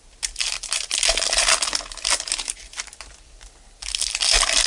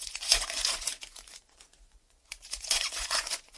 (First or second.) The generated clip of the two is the second